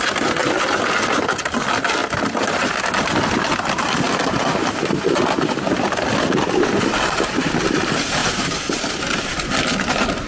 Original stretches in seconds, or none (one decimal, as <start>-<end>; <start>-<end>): 0.0-10.3